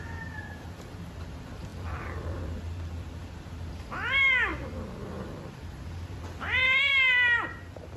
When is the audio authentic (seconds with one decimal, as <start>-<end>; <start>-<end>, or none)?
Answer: 0.0-1.7; 3.7-8.0